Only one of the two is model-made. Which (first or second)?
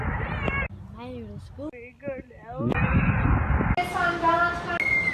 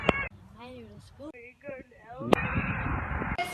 second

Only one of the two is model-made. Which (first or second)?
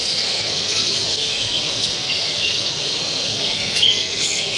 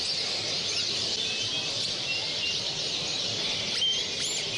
first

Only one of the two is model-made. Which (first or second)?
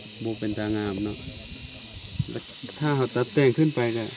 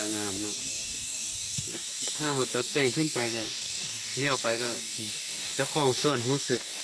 second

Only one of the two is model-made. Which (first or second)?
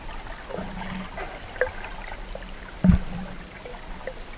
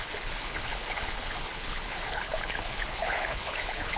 second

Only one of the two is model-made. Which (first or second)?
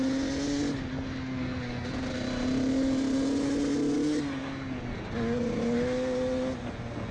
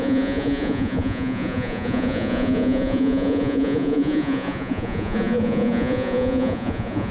second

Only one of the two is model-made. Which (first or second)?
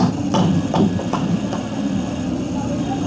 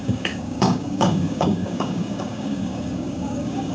second